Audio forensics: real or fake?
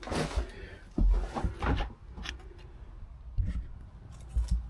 real